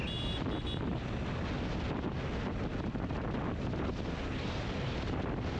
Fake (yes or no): no